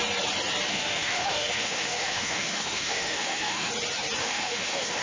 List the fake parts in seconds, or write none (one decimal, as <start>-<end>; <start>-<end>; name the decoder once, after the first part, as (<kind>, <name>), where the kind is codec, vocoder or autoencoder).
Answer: 0.7-3.7 (autoencoder, DAC-VAE); 4.2-5.0